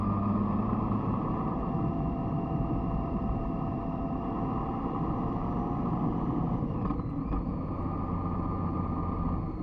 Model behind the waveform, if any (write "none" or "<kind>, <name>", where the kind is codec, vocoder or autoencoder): vocoder, BigVGAN v2